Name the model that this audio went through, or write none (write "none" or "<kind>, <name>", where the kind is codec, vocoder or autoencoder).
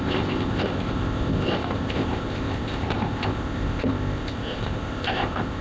codec, ZipCodec